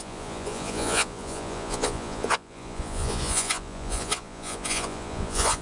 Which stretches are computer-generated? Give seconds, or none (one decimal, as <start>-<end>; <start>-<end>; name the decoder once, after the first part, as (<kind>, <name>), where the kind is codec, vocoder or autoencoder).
0.0-5.6 (vocoder, Vocos)

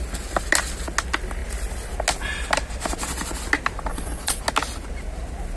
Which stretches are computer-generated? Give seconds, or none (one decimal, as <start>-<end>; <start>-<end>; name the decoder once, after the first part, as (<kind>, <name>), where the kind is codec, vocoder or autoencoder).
3.9-4.4 (vocoder, Vocos)

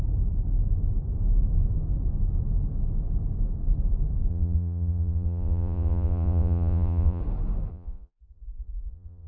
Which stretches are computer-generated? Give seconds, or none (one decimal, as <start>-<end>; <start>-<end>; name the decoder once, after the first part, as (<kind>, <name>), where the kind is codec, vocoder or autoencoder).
4.3-7.2 (vocoder, Vocos); 7.7-9.3